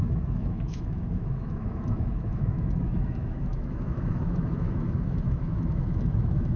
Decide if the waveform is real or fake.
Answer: fake